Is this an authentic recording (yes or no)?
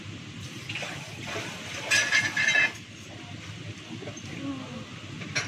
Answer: yes